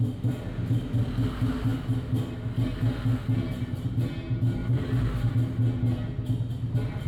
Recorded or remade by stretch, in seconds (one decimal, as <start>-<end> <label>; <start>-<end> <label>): 0.0-4.6 recorded; 4.6-5.3 remade; 5.3-7.1 recorded